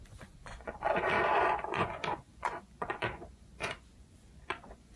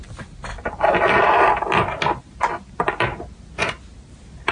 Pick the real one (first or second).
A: second